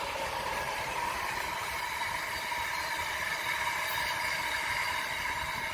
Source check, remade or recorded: recorded